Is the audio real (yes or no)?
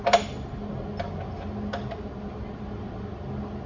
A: yes